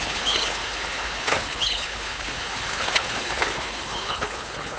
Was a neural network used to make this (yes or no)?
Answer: yes